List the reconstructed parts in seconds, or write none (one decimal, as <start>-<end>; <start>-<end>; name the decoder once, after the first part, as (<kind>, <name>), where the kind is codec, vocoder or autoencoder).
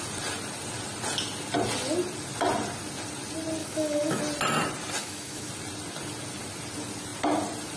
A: 3.6-4.2 (autoencoder, DAC-VAE); 5.0-5.5